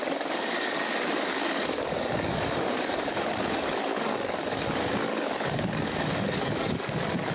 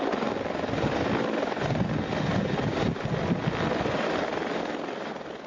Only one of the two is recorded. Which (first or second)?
second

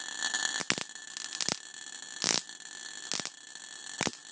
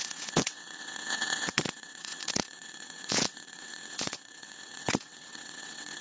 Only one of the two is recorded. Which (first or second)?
first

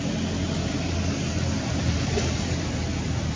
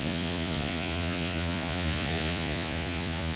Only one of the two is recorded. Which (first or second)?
first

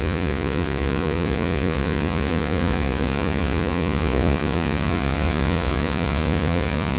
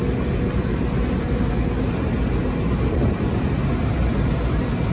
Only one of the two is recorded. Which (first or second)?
second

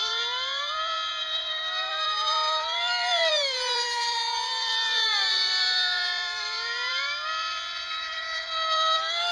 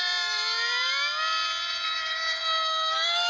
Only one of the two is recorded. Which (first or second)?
second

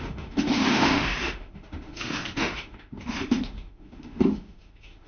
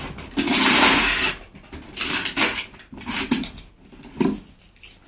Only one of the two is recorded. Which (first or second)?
second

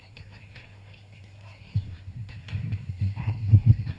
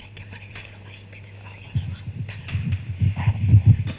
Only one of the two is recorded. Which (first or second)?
second